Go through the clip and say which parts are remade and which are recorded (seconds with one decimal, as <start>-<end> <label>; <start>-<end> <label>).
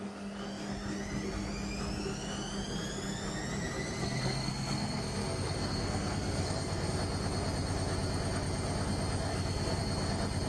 0.0-4.0 recorded; 4.0-7.0 remade; 7.0-9.3 recorded; 9.3-9.8 remade; 9.8-10.5 recorded